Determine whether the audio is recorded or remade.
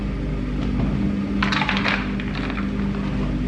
recorded